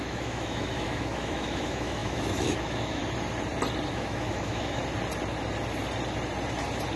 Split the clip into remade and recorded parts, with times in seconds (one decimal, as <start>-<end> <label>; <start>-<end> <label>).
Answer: 0.0-3.0 remade; 3.0-3.9 recorded; 3.9-4.8 remade; 4.8-7.0 recorded